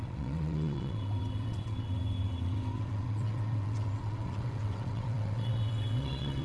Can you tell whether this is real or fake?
fake